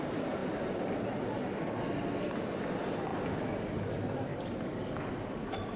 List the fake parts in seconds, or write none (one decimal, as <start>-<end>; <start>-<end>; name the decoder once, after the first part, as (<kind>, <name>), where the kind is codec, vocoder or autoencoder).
4.3-5.1 (codec, DAC)